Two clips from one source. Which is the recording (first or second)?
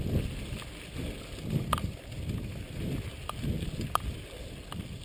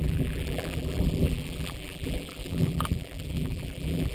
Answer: first